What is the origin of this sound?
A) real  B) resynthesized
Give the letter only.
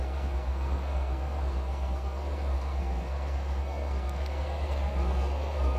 B